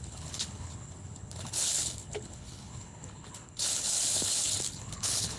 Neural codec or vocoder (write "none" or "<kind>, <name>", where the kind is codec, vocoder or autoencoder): codec, HILCodec